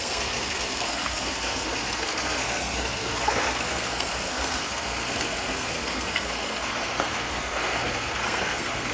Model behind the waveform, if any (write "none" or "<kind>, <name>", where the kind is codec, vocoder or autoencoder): codec, SNAC